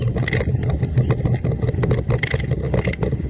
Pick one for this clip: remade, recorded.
recorded